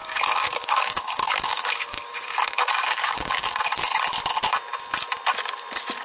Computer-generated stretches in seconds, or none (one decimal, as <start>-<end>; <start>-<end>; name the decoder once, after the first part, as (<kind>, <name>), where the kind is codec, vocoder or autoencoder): 0.0-3.6 (codec, DAC)